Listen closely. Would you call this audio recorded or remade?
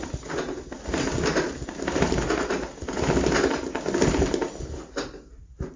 recorded